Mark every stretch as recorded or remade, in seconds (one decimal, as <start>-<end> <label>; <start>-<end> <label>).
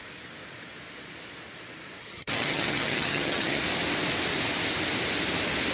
0.0-2.0 recorded; 2.0-3.6 remade; 3.6-5.7 recorded